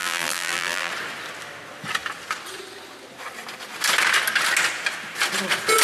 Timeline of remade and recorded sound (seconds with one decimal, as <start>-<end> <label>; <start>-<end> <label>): 0.0-0.9 remade; 0.9-5.8 recorded